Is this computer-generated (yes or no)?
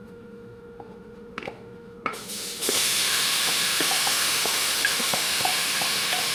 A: yes